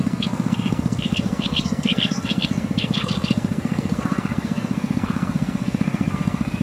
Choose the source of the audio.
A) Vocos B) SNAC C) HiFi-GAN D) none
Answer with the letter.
B